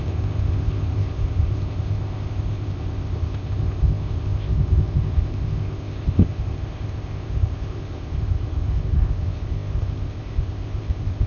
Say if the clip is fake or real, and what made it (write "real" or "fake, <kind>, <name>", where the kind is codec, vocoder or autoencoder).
fake, codec, ZipCodec